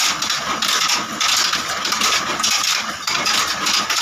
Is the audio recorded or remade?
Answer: recorded